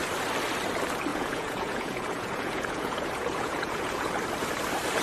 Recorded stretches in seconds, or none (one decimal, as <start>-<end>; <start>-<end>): 0.0-1.1; 4.1-5.0

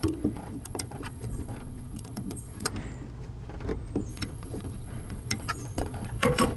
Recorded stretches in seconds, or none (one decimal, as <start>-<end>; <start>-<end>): 2.7-4.1

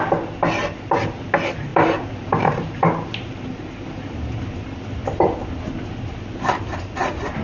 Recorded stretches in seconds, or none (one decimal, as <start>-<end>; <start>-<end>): 0.0-1.7; 3.7-7.4